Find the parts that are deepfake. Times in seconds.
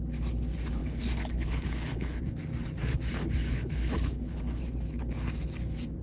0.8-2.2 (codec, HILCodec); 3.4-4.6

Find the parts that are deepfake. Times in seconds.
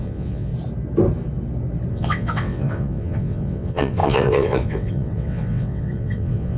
0.0-0.5 (vocoder, WaveNeXt); 1.9-6.6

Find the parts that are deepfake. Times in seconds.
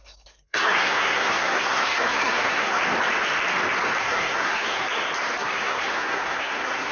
0.0-2.8 (codec, SNAC); 4.0-4.8; 5.4-6.9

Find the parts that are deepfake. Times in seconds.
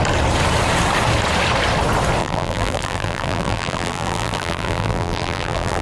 2.2-5.8 (vocoder, BigVGAN v2)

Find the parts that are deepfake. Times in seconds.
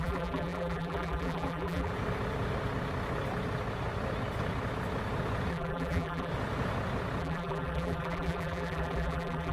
0.0-1.9 (vocoder, BigVGAN v2); 5.5-6.3; 7.2-9.5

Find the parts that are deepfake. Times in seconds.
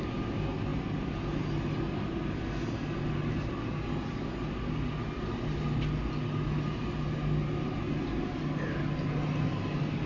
none